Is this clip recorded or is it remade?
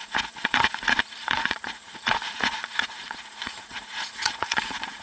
remade